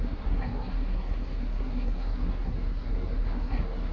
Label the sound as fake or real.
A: fake